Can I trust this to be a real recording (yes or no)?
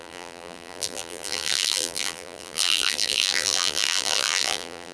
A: no